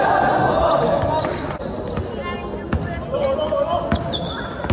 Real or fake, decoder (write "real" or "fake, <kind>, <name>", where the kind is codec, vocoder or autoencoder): real